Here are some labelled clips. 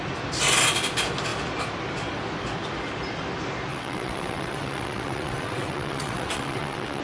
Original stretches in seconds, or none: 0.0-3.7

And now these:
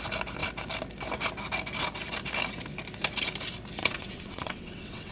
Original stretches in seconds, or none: 0.0-3.8

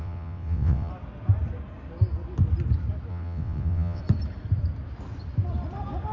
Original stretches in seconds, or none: 0.9-3.1; 4.0-6.1

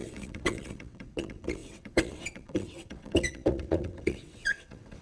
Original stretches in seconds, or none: none

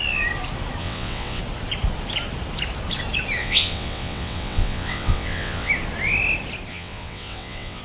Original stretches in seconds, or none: 0.0-0.8; 1.4-3.4; 5.7-6.7

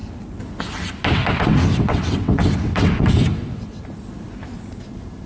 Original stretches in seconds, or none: 0.0-1.2; 3.8-5.3